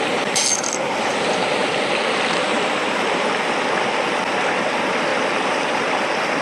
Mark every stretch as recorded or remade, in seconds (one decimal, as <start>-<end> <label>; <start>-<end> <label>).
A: 0.0-1.6 recorded; 1.6-4.2 remade; 4.2-5.1 recorded; 5.1-5.8 remade; 5.8-6.4 recorded